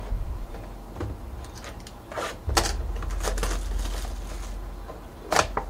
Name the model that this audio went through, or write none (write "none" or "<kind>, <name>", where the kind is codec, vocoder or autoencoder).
none